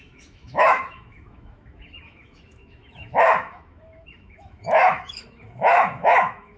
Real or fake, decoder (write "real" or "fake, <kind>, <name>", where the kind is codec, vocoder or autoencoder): fake, autoencoder, DAC-VAE